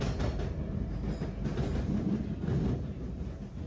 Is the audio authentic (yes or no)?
yes